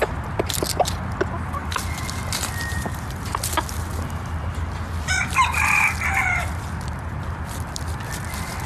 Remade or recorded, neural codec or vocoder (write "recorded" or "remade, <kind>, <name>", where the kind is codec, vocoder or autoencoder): recorded